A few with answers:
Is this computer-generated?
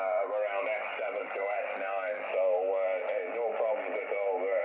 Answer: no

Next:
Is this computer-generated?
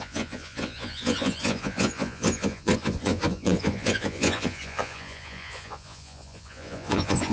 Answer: yes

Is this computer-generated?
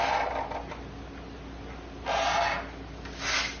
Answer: no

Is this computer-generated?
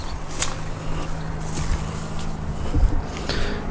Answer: no